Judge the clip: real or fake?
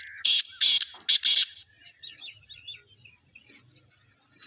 real